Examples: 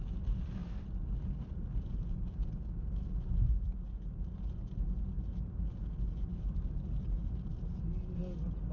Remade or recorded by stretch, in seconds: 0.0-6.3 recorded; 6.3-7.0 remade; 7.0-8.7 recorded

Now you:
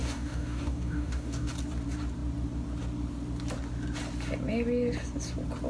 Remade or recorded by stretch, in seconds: 0.0-1.5 remade; 1.5-5.7 recorded

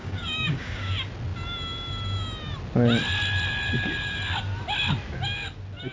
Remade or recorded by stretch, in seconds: 0.0-0.9 remade; 0.9-5.9 recorded

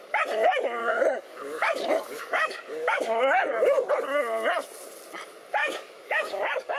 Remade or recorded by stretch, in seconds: 0.0-0.8 recorded; 0.8-3.9 remade; 3.9-5.6 recorded; 5.6-6.8 remade

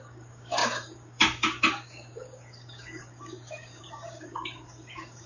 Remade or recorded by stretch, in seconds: 0.0-5.3 remade

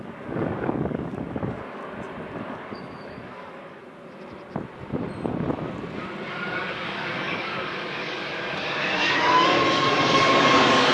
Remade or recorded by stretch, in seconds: 0.0-1.8 remade; 1.8-2.4 recorded; 2.4-3.8 remade; 3.8-6.3 recorded; 6.3-10.9 remade